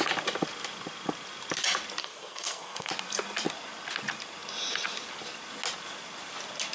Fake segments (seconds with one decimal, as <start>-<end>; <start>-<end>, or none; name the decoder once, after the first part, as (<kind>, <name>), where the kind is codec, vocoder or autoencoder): 2.0-2.9 (codec, SNAC)